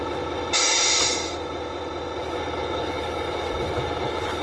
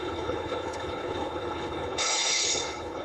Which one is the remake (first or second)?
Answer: second